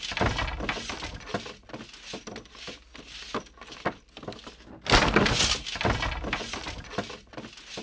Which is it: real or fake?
real